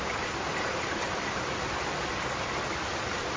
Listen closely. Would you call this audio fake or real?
real